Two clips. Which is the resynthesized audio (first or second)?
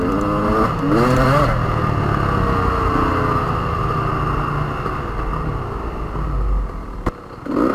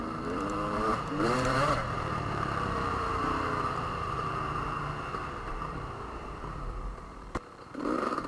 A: second